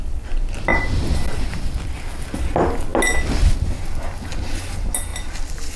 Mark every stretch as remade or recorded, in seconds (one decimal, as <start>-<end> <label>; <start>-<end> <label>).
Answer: 0.0-5.8 recorded